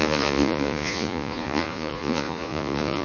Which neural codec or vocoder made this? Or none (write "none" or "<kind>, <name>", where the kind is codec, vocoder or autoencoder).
vocoder, Vocos